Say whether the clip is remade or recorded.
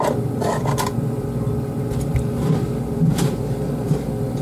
remade